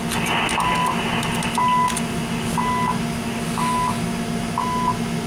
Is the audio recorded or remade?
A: recorded